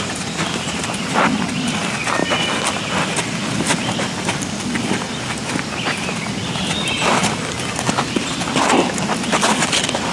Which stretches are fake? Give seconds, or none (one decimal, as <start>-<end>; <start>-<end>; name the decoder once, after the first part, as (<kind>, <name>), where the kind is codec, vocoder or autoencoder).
none